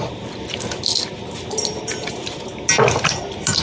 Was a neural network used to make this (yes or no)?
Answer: no